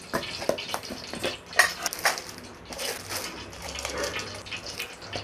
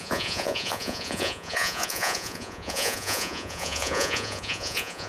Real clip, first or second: first